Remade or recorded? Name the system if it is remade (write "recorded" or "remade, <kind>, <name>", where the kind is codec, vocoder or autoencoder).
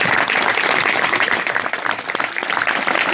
recorded